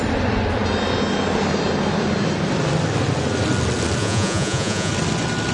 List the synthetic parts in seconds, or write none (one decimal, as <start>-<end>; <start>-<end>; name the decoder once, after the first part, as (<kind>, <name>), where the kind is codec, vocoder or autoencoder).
4.0-4.9 (vocoder, Vocos)